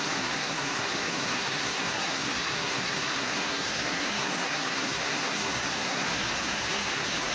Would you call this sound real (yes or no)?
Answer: no